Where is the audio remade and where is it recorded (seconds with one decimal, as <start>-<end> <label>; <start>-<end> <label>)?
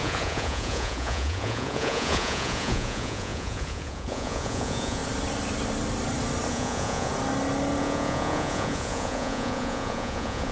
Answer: 0.0-5.0 remade; 5.0-6.5 recorded; 6.5-7.1 remade; 7.1-7.8 recorded; 7.8-10.5 remade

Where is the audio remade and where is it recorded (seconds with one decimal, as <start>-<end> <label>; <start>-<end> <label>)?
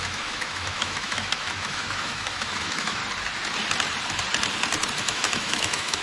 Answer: 0.0-3.0 remade; 3.0-5.0 recorded; 5.0-6.0 remade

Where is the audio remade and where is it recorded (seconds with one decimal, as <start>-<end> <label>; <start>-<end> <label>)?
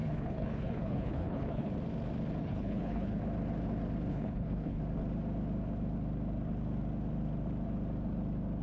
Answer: 0.0-1.7 remade; 1.7-2.4 recorded; 2.4-3.2 remade; 3.2-4.1 recorded; 4.1-4.8 remade; 4.8-8.6 recorded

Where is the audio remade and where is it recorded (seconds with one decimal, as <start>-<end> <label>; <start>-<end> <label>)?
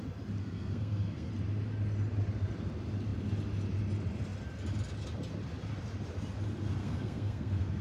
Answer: 0.0-0.4 recorded; 0.4-1.3 remade; 1.3-6.8 recorded; 6.8-7.8 remade